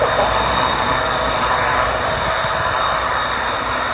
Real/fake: real